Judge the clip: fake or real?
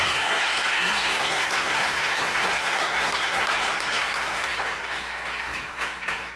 fake